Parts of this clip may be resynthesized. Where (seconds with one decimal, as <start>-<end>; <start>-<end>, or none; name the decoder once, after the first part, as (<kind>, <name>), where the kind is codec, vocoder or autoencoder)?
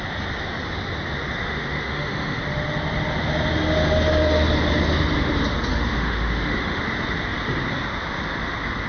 1.4-2.4 (autoencoder, DAC-VAE); 5.7-6.8